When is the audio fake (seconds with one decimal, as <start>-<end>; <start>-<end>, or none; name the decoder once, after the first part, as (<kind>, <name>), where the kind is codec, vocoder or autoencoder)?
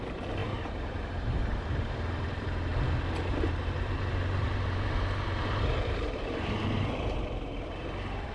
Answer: 0.0-2.7 (vocoder, BigVGAN v2); 3.3-8.3